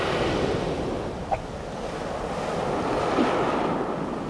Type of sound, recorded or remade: recorded